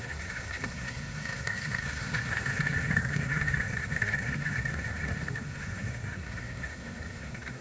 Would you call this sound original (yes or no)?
no